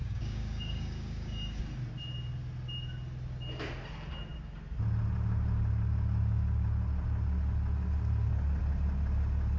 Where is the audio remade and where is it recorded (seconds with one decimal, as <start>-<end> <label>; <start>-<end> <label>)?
0.0-1.6 remade; 1.6-9.6 recorded